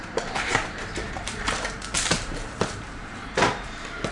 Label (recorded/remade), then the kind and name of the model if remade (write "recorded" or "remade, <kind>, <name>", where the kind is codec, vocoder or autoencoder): remade, vocoder, BigVGAN v2